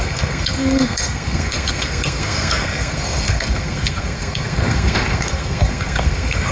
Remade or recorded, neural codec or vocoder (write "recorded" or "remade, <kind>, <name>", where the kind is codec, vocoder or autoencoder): remade, codec, SNAC